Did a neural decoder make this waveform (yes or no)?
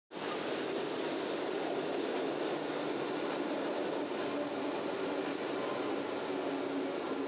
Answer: no